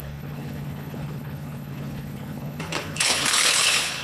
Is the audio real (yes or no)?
no